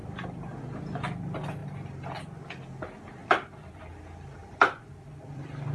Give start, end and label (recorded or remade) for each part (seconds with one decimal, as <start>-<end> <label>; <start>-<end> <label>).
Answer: 0.0-0.6 remade; 0.6-1.6 recorded; 1.6-2.2 remade; 2.2-3.2 recorded; 3.2-3.8 remade; 3.8-4.4 recorded; 4.4-5.7 remade